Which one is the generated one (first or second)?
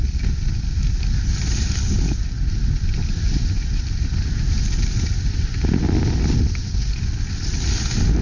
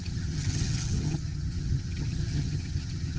second